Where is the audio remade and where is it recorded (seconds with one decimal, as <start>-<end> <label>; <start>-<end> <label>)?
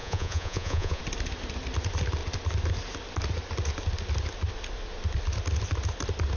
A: 0.0-1.0 remade; 1.0-6.4 recorded